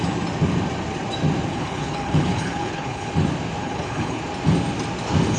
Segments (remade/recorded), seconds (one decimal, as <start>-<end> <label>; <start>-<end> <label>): 0.0-1.5 recorded; 1.5-3.1 remade; 3.1-3.6 recorded; 3.6-4.2 remade; 4.2-5.4 recorded